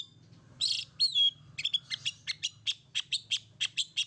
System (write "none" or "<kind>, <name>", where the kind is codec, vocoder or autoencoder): none